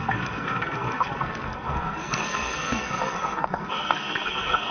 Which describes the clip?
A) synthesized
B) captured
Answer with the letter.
A